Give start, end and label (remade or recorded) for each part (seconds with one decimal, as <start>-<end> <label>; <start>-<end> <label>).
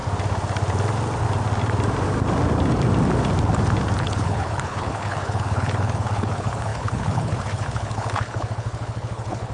0.0-4.0 recorded; 4.0-9.5 remade